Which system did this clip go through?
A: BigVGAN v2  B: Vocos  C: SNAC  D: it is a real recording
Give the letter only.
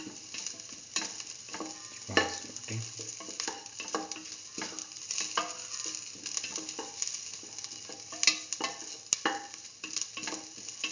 D